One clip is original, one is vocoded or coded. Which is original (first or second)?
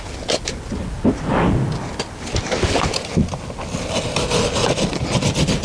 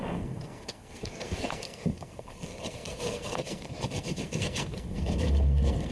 first